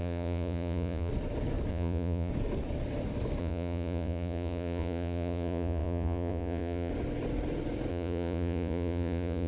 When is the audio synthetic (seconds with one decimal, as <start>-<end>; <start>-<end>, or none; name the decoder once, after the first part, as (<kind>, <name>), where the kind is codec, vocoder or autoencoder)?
0.0-1.1 (vocoder, Vocos); 1.7-2.3; 3.4-6.9; 7.9-9.5